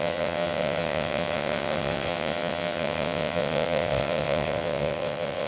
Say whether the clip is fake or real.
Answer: fake